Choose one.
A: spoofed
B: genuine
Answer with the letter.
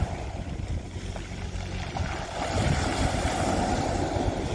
B